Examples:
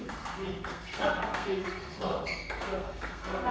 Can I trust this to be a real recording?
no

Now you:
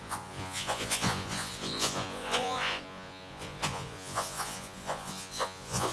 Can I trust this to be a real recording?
no